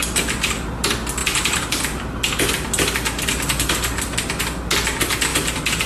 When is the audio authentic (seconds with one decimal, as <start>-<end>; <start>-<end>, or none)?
0.0-5.9